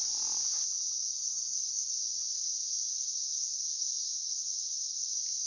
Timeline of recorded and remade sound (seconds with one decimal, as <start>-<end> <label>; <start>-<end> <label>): 0.0-1.1 recorded; 1.1-1.9 remade; 1.9-2.9 recorded; 2.9-5.1 remade; 5.1-5.5 recorded